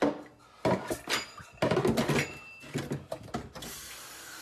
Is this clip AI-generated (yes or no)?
no